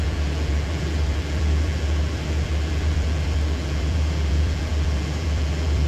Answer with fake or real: fake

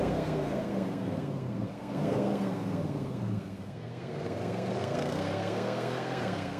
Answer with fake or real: fake